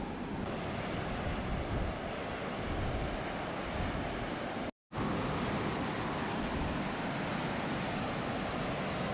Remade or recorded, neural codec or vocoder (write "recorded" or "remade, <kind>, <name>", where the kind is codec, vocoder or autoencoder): recorded